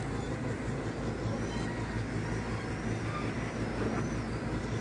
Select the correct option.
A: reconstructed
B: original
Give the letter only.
B